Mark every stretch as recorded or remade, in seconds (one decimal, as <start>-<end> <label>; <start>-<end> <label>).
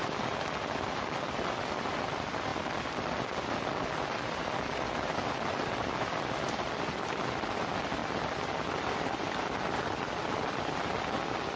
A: 0.0-11.6 recorded